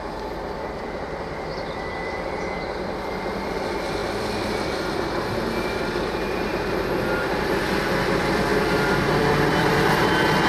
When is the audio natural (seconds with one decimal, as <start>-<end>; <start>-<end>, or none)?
none